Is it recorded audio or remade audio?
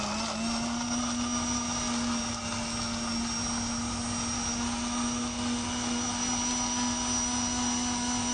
recorded